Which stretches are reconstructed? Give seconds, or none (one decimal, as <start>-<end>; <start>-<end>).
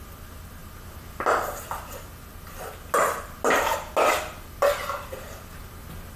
none